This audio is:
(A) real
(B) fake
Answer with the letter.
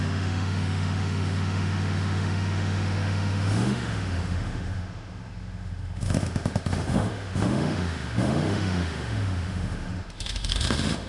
B